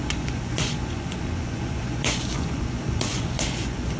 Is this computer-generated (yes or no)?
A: yes